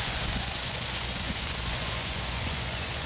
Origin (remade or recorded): remade